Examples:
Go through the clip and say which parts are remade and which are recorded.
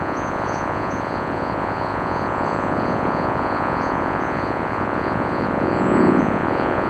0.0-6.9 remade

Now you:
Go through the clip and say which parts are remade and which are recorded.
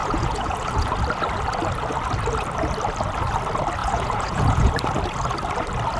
0.0-0.9 remade; 0.9-3.8 recorded; 3.8-4.7 remade; 4.7-6.0 recorded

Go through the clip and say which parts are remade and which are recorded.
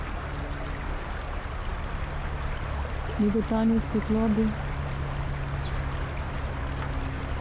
0.0-7.4 recorded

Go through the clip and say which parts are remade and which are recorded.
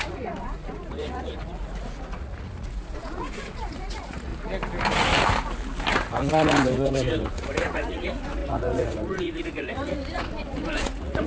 0.0-4.3 remade; 4.3-5.9 recorded; 5.9-11.3 remade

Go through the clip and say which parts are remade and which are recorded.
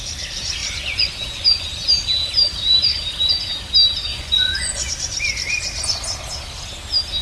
0.0-0.6 recorded; 0.6-1.7 remade; 1.7-4.1 recorded; 4.1-4.9 remade; 4.9-7.2 recorded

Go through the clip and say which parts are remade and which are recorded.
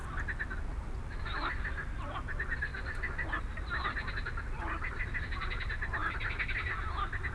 0.0-7.3 recorded